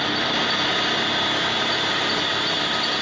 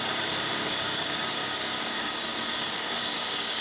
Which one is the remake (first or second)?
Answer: second